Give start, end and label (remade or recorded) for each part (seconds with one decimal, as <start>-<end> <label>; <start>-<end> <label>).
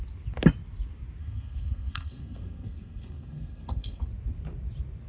0.0-1.2 recorded; 1.2-4.0 remade; 4.0-5.1 recorded